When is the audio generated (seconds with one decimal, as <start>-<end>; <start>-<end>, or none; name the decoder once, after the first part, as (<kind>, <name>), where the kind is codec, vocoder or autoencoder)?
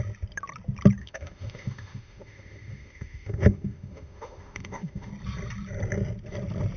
1.0-5.1 (autoencoder, DAC-VAE)